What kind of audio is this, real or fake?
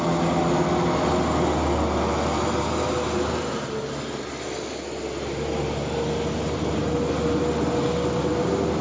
real